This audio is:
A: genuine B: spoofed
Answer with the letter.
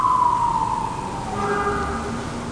A